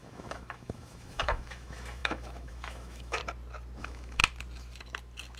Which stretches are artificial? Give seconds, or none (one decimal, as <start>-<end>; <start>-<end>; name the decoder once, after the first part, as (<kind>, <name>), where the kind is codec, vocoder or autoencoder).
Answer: 0.0-3.2 (autoencoder, DAC-VAE); 3.8-4.2